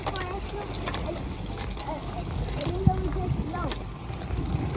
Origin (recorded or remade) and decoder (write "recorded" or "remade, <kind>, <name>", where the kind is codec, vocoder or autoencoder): remade, vocoder, BigVGAN v2